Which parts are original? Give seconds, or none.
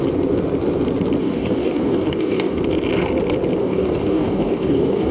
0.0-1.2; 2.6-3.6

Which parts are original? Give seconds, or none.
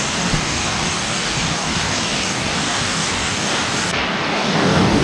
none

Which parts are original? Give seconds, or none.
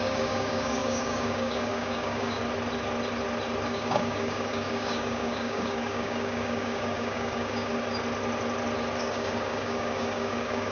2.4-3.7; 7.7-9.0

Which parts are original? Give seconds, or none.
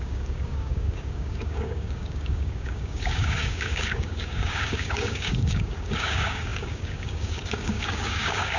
none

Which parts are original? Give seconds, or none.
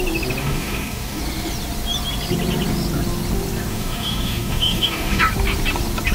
0.0-0.4; 1.2-3.7; 5.2-6.1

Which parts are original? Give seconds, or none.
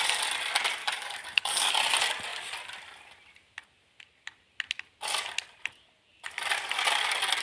0.0-0.8; 1.7-7.4